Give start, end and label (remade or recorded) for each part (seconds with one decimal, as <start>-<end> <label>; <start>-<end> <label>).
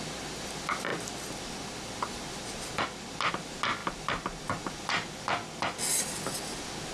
0.0-6.9 recorded